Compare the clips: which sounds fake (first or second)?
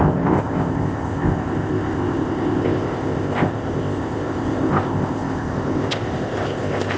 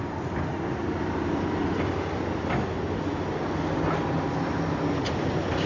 first